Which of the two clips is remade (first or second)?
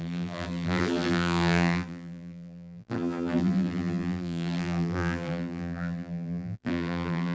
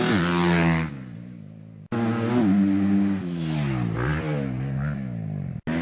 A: first